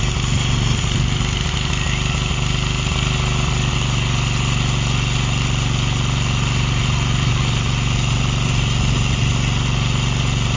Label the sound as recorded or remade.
recorded